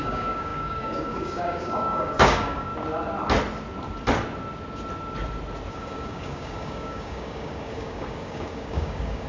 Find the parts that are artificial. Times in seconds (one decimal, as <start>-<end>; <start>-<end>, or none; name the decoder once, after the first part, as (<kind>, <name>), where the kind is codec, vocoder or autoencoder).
0.0-2.7 (codec, DAC); 5.7-9.3